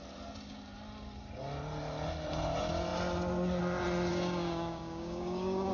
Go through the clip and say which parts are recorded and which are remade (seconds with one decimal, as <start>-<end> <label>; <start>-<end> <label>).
0.0-4.1 recorded; 4.1-5.7 remade